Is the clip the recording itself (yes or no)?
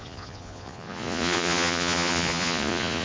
no